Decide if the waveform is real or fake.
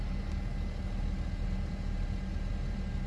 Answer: real